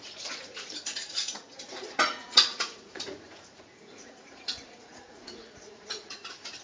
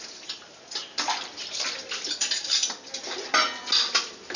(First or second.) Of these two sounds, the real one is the second